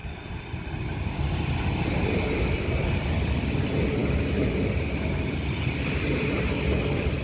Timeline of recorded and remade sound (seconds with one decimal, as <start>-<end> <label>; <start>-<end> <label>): 0.0-7.2 recorded